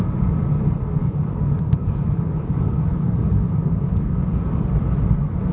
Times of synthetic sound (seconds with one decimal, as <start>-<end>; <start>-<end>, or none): 1.0-4.3